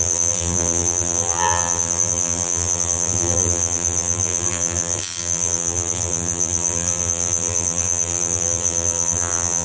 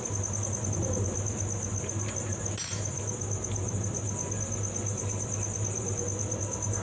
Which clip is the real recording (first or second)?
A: second